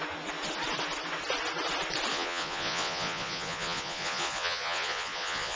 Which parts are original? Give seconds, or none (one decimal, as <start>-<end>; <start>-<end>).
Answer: 0.0-2.1